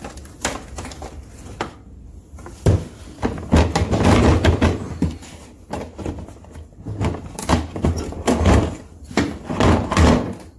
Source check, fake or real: real